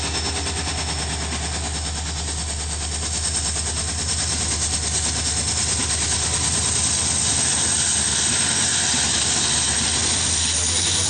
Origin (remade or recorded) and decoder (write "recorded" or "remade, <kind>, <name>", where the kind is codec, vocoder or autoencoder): recorded